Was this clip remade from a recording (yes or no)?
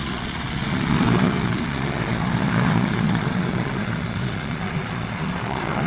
yes